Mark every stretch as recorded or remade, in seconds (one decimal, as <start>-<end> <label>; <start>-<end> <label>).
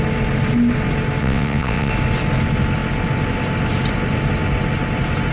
0.0-1.2 recorded; 1.2-1.9 remade; 1.9-5.3 recorded